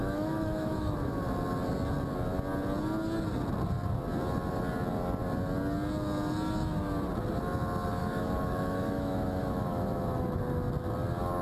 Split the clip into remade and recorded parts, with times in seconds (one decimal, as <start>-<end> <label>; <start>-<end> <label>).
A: 0.0-1.2 remade; 1.2-8.0 recorded; 8.0-10.4 remade; 10.4-11.4 recorded